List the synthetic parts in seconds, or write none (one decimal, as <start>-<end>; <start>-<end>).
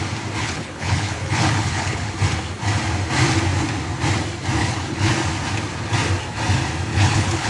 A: 0.4-2.1; 4.6-5.1; 6.9-7.5